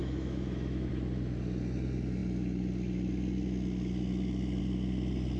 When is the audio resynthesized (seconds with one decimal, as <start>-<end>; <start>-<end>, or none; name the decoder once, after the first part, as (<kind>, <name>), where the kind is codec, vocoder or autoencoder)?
0.0-0.9 (autoencoder, DAC-VAE)